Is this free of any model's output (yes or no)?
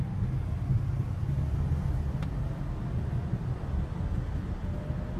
yes